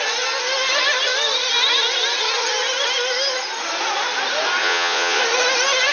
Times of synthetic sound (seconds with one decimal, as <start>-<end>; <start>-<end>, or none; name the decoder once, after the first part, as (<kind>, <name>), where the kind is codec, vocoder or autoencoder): 4.6-5.2 (vocoder, Vocos)